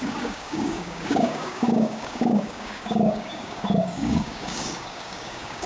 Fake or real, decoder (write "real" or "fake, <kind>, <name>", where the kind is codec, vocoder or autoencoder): fake, codec, DAC